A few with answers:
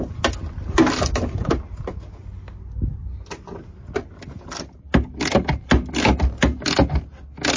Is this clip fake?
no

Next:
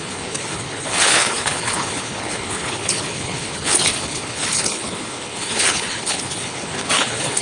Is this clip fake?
yes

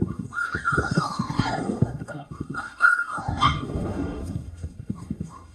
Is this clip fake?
yes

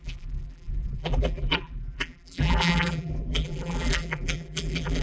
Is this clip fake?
yes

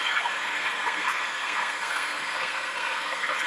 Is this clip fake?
yes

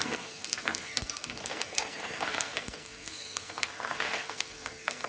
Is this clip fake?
yes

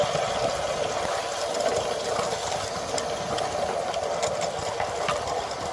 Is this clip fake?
no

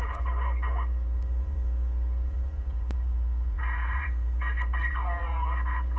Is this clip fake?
yes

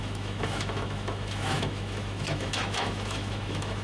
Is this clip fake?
yes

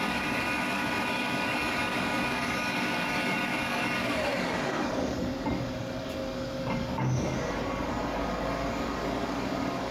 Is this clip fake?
yes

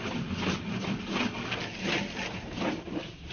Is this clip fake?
no